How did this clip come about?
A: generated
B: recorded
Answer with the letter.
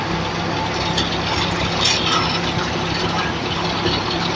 B